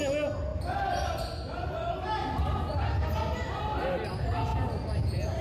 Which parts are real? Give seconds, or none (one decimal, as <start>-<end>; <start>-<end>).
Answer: 0.0-5.4